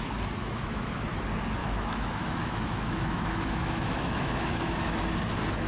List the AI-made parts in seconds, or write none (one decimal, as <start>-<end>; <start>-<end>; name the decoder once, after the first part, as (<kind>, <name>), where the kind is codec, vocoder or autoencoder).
0.4-0.9 (autoencoder, DAC-VAE); 1.6-5.0